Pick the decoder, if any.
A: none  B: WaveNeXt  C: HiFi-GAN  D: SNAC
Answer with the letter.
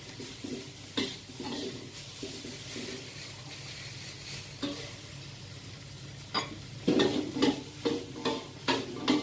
A